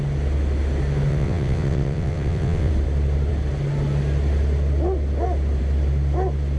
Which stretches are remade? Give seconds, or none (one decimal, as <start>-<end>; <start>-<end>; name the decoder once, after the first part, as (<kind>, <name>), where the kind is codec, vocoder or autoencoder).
1.1-2.7 (vocoder, WaveNeXt)